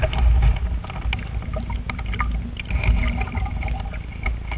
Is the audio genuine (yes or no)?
yes